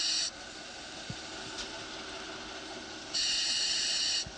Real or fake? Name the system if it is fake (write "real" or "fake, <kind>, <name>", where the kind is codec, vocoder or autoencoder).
real